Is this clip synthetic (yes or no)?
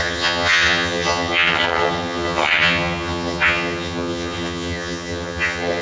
yes